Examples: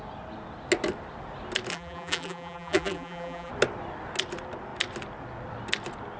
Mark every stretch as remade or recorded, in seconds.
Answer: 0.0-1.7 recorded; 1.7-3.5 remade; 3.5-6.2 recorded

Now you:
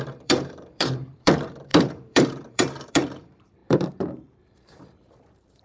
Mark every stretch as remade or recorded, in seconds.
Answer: 0.0-5.6 remade

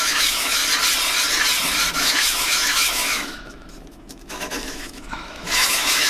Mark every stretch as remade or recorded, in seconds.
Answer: 0.0-0.6 remade; 0.6-1.9 recorded; 1.9-6.1 remade

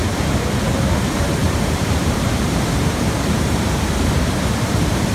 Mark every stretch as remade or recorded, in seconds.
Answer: 0.0-1.4 recorded; 1.4-3.2 remade; 3.2-5.1 recorded